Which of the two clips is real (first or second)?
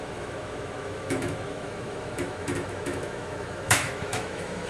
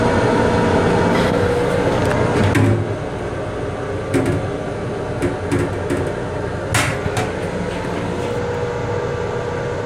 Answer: second